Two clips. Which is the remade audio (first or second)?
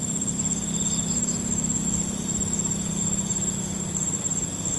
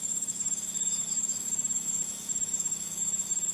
second